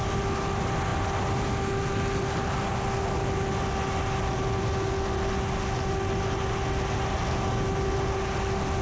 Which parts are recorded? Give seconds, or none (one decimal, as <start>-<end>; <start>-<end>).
0.0-8.8